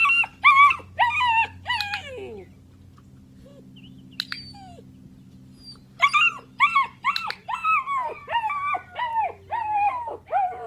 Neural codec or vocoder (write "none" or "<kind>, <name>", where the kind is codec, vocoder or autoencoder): none